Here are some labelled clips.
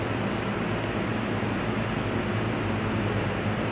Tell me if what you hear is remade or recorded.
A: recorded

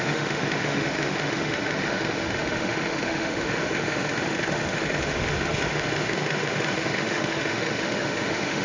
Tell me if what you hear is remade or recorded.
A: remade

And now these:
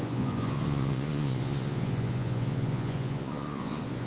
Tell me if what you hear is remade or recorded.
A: remade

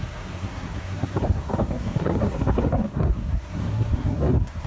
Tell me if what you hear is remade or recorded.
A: remade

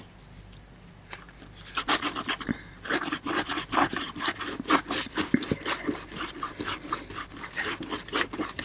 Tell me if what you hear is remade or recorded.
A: recorded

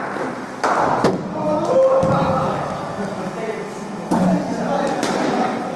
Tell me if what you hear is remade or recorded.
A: recorded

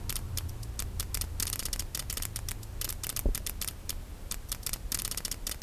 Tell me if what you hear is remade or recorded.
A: recorded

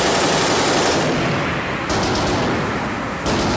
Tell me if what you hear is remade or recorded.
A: recorded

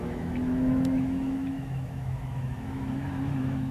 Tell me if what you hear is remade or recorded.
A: remade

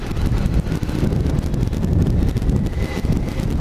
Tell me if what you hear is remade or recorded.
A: recorded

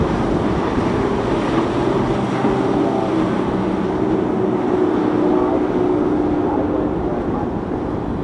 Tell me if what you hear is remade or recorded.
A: recorded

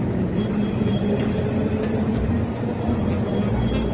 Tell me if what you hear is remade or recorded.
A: recorded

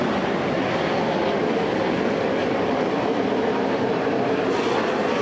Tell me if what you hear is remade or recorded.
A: remade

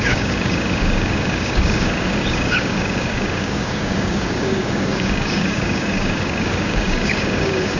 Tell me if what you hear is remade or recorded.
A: remade